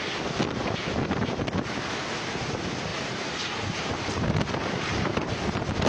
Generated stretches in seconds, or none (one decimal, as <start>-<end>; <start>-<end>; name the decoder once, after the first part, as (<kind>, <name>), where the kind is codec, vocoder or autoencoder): 2.9-4.1 (vocoder, BigVGAN v2); 4.9-5.4